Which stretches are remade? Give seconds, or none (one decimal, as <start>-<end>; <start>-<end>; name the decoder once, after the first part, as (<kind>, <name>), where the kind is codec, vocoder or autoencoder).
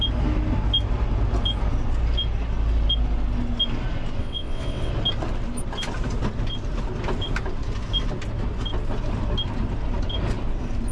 4.2-4.9 (vocoder, WaveNeXt)